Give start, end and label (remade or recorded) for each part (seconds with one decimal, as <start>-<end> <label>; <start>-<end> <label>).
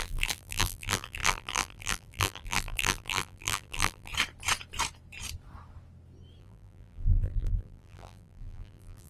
0.0-4.1 remade; 4.1-6.4 recorded; 6.4-9.1 remade